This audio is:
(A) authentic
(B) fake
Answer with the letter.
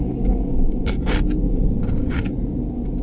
A